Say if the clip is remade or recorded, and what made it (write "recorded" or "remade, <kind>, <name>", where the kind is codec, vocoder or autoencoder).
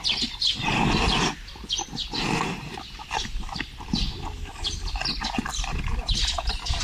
recorded